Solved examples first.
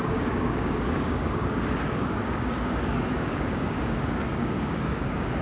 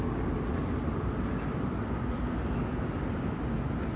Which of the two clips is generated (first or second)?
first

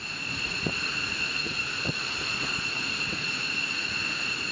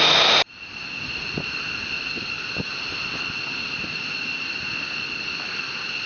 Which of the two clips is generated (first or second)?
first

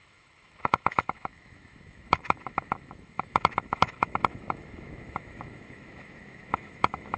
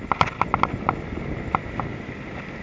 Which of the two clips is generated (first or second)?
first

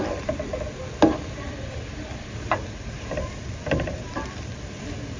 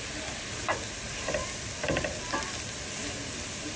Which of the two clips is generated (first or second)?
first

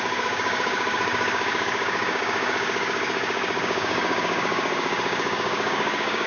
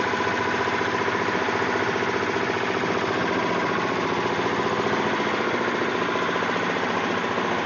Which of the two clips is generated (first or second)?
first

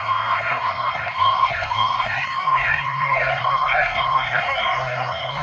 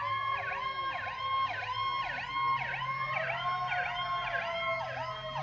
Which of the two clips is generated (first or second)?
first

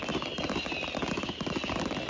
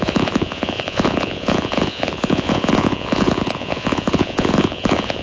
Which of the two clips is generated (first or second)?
second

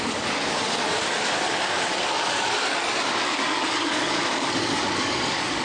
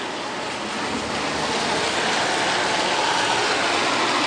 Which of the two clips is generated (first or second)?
first